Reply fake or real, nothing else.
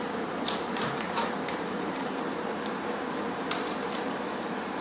fake